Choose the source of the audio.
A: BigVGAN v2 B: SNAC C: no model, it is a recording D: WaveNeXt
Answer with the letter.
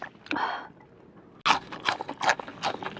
C